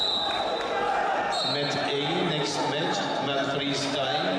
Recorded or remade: recorded